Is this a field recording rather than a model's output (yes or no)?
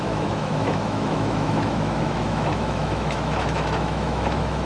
no